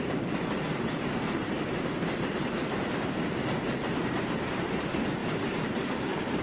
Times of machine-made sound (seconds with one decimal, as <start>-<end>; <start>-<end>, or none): 0.0-6.4